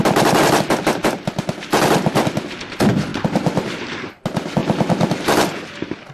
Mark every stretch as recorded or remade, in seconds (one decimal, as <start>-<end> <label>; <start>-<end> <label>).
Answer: 0.0-1.0 recorded; 1.0-1.8 remade; 1.8-6.1 recorded